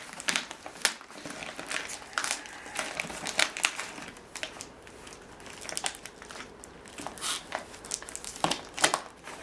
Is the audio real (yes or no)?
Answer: yes